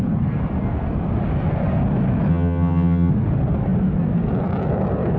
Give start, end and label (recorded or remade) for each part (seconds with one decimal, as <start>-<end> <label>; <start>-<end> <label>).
0.0-2.3 recorded; 2.3-3.1 remade; 3.1-5.2 recorded